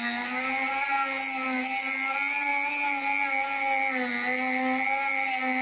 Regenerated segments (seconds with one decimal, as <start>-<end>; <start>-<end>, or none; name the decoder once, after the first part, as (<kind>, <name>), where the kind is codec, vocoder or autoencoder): none